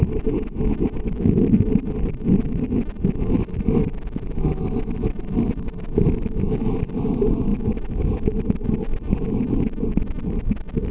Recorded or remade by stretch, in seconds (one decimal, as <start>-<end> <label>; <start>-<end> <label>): 0.0-10.9 recorded